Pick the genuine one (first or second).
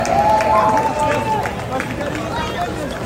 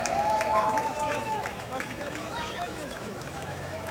first